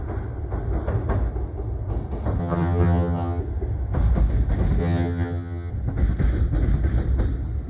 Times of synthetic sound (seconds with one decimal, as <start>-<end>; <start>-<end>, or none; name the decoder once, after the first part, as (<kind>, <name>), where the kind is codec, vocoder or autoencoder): 2.4-3.4 (vocoder, HiFi-GAN); 4.8-5.7